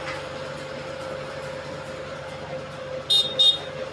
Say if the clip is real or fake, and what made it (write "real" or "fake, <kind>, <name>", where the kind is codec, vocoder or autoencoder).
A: real